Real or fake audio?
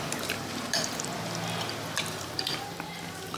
fake